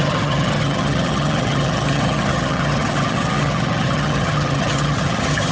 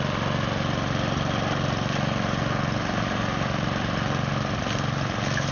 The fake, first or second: first